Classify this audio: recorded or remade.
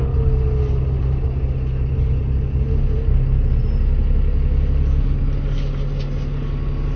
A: recorded